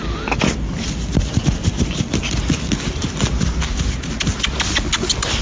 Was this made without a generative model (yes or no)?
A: yes